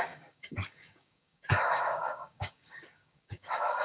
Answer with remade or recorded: remade